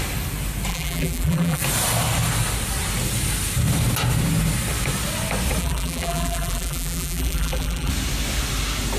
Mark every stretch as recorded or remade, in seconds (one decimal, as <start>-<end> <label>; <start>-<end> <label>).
0.0-0.7 recorded; 0.7-1.6 remade; 1.6-5.6 recorded; 5.6-7.9 remade; 7.9-9.0 recorded